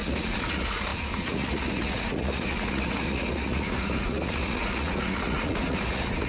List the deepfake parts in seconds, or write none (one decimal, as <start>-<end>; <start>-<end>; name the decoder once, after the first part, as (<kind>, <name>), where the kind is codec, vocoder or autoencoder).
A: 0.0-6.3 (vocoder, Vocos)